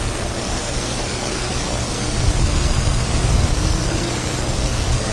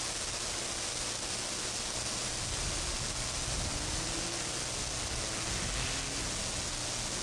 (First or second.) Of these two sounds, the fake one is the first